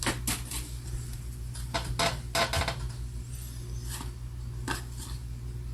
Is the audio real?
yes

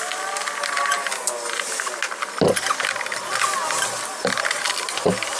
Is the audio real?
yes